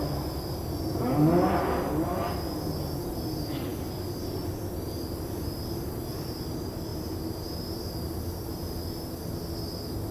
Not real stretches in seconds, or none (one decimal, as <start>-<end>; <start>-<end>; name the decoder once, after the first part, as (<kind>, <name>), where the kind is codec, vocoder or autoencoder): none